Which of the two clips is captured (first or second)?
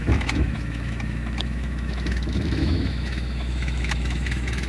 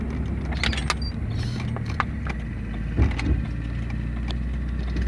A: second